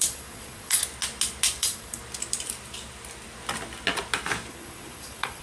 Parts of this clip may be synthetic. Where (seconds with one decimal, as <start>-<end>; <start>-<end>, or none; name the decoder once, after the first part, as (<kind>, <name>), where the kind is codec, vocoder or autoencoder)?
0.0-0.8 (vocoder, Vocos); 1.6-2.0; 4.5-5.4